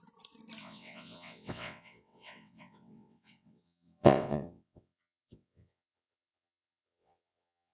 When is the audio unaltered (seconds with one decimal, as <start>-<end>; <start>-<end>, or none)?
0.0-0.6